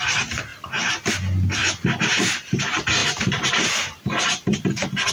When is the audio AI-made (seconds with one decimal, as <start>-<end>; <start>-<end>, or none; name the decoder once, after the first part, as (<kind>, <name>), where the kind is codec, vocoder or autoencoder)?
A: 0.5-1.1 (vocoder, BigVGAN v2); 1.6-2.5; 3.0-5.1